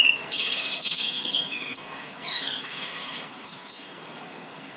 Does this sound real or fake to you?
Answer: fake